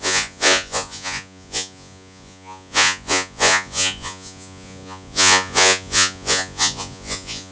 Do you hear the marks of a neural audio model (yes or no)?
yes